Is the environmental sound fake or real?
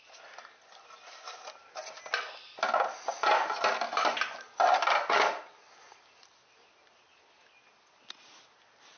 real